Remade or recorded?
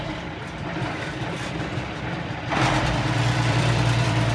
remade